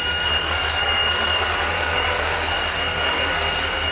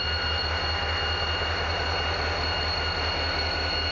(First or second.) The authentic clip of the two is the second